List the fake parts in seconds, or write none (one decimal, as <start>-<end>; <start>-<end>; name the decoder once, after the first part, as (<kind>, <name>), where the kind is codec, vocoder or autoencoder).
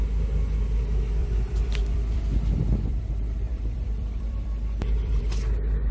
1.2-2.2 (vocoder, BigVGAN v2); 2.9-5.2